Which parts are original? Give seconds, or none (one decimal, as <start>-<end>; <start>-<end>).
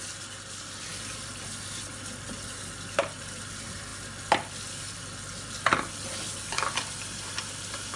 0.0-8.0